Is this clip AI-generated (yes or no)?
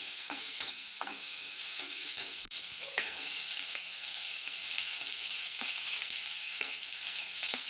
yes